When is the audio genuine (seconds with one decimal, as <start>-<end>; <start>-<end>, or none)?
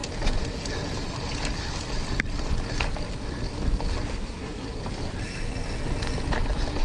0.0-4.1; 4.8-6.8